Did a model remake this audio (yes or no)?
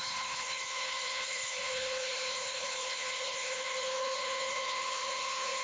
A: yes